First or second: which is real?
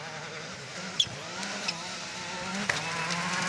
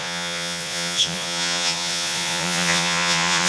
first